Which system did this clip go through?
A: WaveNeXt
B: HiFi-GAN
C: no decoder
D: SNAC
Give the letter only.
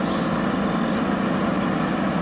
C